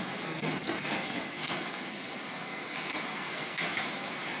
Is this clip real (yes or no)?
no